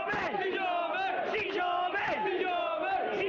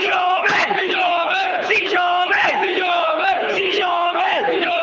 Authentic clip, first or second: first